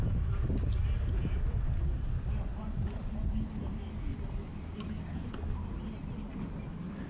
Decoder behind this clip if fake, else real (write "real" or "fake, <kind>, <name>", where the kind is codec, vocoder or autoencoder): real